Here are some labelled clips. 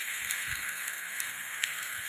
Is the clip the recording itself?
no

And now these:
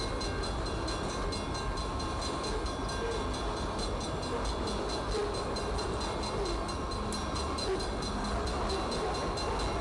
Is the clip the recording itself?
yes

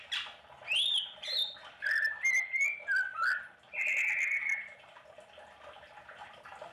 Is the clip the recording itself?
yes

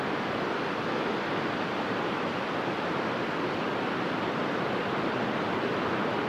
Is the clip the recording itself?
yes